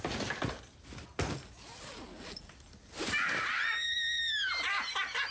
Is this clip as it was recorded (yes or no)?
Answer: yes